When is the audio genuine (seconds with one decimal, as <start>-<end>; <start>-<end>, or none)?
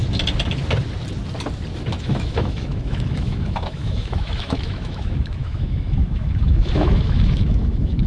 0.0-2.0